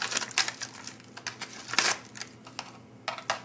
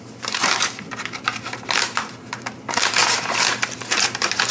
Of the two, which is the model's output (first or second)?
second